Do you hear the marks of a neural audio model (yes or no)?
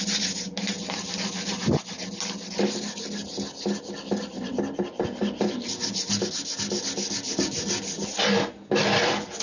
no